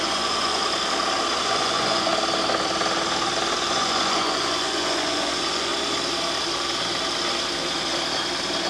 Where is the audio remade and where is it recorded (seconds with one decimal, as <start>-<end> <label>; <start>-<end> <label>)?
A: 0.0-0.6 remade; 0.6-1.4 recorded; 1.4-2.1 remade; 2.1-3.7 recorded; 3.7-5.7 remade; 5.7-8.7 recorded